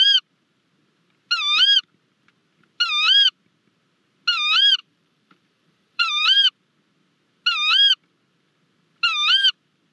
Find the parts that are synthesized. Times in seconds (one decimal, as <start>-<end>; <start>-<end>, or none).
4.8-6.5